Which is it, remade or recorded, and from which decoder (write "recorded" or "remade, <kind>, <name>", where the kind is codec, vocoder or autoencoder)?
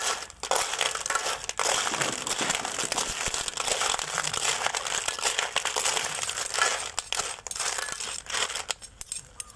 recorded